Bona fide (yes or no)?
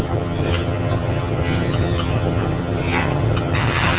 no